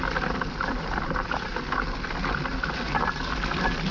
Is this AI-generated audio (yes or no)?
no